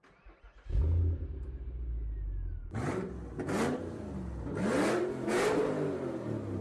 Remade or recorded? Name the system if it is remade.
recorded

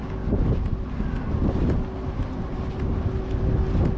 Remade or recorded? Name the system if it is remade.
recorded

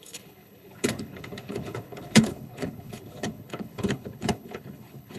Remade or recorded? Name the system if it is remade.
remade, codec, HILCodec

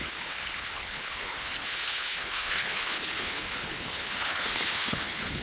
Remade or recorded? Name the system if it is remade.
remade, codec, HILCodec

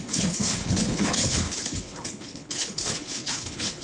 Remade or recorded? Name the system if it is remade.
remade, codec, HILCodec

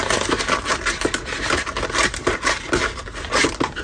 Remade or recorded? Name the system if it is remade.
recorded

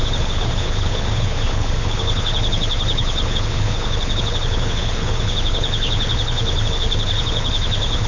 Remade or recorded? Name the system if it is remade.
remade, codec, HILCodec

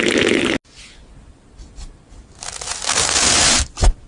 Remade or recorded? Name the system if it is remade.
recorded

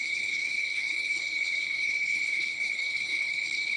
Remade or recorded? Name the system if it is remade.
remade, codec, HILCodec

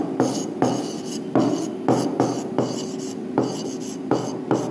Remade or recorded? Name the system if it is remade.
recorded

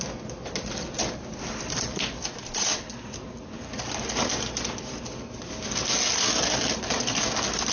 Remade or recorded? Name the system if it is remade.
recorded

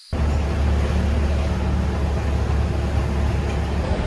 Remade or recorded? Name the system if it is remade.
recorded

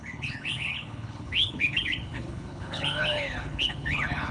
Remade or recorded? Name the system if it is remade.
remade, codec, HILCodec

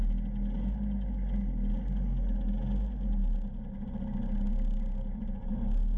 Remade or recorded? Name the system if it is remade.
recorded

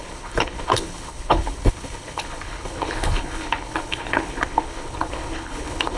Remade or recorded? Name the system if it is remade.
remade, codec, HILCodec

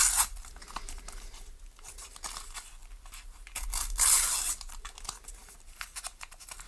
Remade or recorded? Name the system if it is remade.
recorded